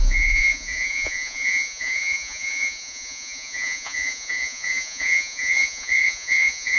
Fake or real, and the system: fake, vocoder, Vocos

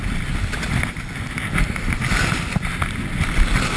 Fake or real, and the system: real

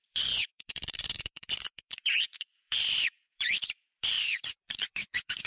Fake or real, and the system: fake, vocoder, Vocos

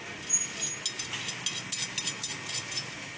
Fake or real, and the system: real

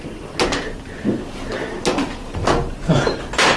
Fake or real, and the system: real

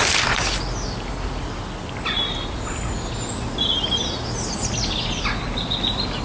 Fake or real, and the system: real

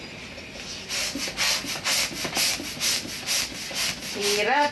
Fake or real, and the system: real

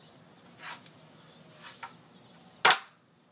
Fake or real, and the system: real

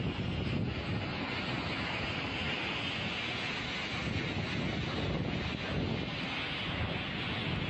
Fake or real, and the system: real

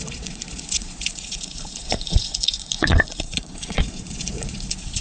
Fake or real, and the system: fake, vocoder, Vocos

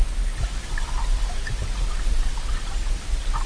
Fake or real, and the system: real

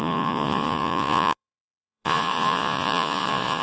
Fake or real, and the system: fake, vocoder, Vocos